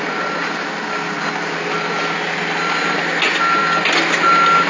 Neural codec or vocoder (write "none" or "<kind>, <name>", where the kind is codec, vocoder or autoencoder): none